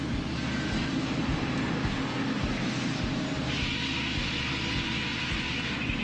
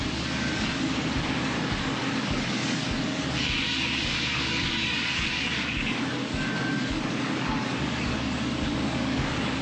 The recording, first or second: first